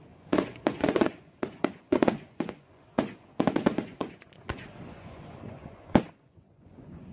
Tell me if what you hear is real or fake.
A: fake